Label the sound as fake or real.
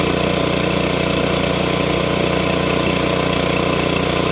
real